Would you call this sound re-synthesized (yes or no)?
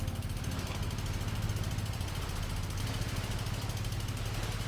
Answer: no